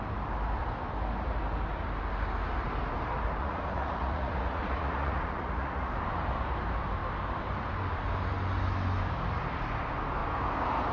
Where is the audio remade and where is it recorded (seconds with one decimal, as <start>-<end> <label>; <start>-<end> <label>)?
0.0-3.4 recorded; 3.4-5.9 remade; 5.9-10.9 recorded